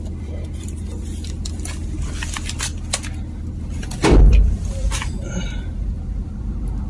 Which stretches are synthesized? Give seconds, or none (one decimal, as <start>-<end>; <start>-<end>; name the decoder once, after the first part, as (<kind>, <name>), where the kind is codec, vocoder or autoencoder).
0.0-2.7 (vocoder, BigVGAN v2); 3.5-6.9

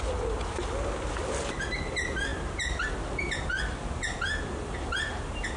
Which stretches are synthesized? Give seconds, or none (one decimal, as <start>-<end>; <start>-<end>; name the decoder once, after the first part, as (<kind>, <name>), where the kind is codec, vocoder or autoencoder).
none

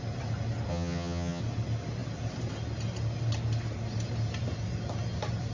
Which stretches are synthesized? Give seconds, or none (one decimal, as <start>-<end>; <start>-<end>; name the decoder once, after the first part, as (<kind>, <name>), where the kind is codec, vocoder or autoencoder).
0.7-1.4 (vocoder, HiFi-GAN)

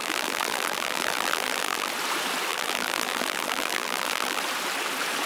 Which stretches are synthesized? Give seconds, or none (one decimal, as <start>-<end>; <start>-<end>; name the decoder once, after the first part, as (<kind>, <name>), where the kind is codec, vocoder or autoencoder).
0.0-1.9 (vocoder, BigVGAN v2); 2.5-4.4

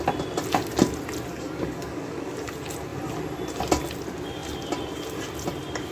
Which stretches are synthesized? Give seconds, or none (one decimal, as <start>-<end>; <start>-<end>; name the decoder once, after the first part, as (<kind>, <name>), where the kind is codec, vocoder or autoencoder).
1.3-2.3 (codec, DAC)

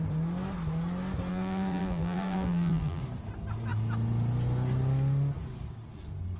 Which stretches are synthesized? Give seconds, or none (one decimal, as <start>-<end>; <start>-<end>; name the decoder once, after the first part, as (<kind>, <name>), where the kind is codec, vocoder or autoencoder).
1.3-3.0 (vocoder, BigVGAN v2)

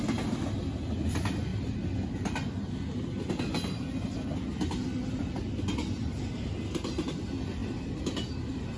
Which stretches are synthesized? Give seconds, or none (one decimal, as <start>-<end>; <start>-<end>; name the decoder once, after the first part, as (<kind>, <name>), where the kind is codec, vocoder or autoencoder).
none

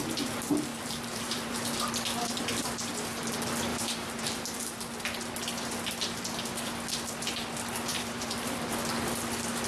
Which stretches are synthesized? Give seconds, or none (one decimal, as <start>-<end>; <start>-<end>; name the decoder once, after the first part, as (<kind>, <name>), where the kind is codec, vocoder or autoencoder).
0.7-1.9 (vocoder, BigVGAN v2); 3.7-4.8; 7.9-8.7